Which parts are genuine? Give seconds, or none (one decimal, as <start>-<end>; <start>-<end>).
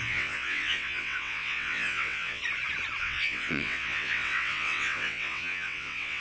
2.4-3.0